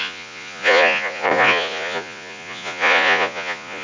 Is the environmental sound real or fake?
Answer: fake